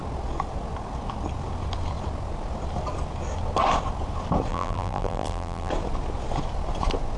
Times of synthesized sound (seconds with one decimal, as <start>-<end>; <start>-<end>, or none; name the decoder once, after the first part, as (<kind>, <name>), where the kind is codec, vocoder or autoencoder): 4.5-5.7 (vocoder, BigVGAN v2)